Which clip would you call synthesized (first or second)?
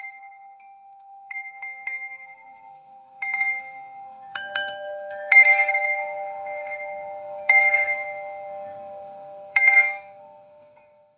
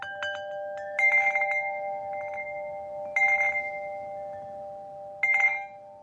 first